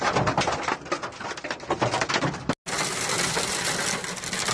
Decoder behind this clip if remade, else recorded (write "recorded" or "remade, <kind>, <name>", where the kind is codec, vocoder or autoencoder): recorded